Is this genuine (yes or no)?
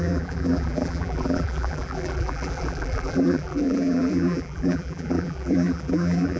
no